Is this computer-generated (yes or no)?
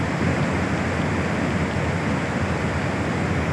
no